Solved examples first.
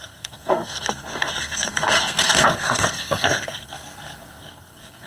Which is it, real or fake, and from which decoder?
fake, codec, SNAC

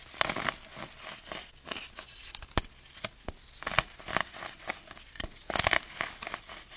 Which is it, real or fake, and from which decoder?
real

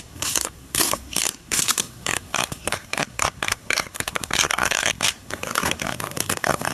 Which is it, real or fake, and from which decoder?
fake, codec, SNAC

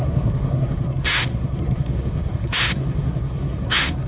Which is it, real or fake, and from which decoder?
fake, codec, SNAC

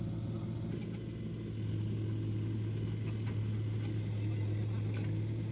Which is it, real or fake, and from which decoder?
real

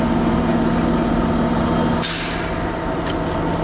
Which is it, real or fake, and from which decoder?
real